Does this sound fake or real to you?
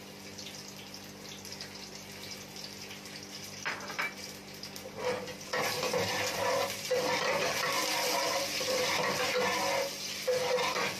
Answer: real